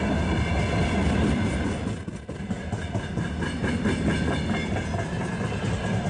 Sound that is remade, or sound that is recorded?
recorded